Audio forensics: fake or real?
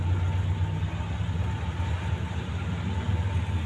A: real